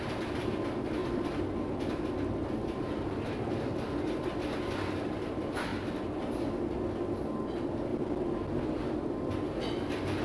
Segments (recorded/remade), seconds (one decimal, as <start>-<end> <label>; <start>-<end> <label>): 0.0-10.2 recorded